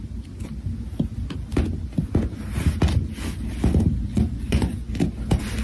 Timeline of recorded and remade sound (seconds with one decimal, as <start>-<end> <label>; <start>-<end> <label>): 0.0-4.1 recorded; 4.1-4.9 remade; 4.9-5.6 recorded